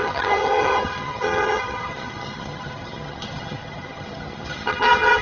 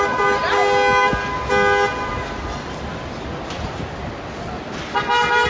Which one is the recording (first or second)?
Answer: second